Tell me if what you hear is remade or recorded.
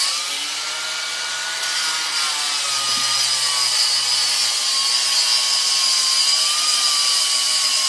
recorded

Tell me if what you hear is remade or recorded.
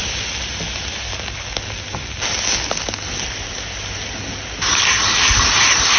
recorded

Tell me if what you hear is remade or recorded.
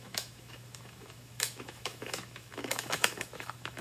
remade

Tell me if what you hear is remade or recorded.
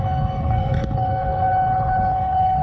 remade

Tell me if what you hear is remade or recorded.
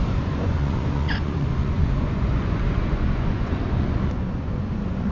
remade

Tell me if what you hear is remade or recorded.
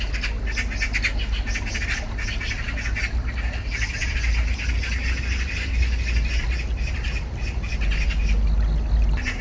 recorded